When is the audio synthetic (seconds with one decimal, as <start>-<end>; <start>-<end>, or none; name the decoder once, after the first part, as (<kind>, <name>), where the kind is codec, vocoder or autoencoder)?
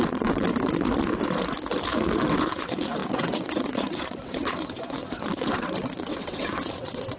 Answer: 0.0-0.5 (vocoder, WaveNeXt); 2.2-7.2